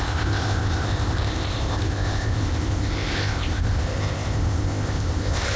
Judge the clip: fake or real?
fake